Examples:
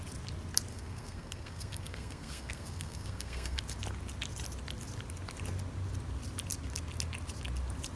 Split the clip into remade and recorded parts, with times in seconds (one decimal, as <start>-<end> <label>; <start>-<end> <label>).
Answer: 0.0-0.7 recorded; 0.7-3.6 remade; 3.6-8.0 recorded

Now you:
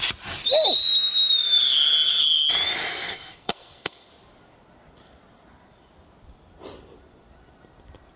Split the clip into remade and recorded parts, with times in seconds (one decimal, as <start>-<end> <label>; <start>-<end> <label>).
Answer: 0.0-2.9 recorded; 2.9-4.1 remade; 4.1-8.2 recorded

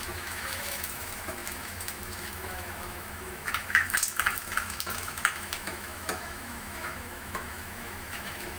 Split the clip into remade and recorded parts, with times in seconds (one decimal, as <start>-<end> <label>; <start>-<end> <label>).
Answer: 0.0-8.6 remade

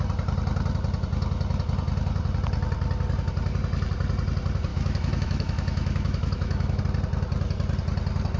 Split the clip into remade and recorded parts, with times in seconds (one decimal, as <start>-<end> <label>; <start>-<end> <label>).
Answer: 0.0-4.7 recorded; 4.7-6.8 remade; 6.8-8.4 recorded

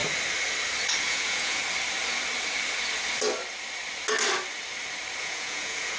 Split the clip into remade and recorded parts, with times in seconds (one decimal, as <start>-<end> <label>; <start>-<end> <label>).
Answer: 0.0-1.0 recorded; 1.0-1.6 remade; 1.6-5.2 recorded; 5.2-6.0 remade